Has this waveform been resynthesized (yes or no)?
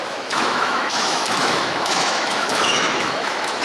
yes